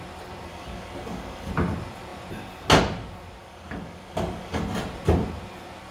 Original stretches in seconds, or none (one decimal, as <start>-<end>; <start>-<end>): 0.0-0.5; 1.5-3.4; 4.6-5.9